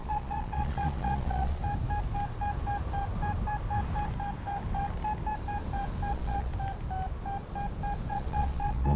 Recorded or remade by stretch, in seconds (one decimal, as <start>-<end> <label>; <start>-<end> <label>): 0.0-1.6 remade; 1.6-6.1 recorded; 6.1-6.5 remade; 6.5-8.1 recorded; 8.1-9.0 remade